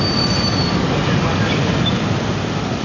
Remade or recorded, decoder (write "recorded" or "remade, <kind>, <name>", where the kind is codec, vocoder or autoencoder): recorded